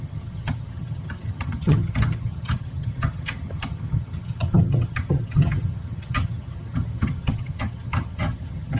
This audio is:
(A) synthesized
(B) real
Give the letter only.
A